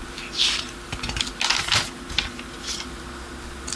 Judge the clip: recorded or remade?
recorded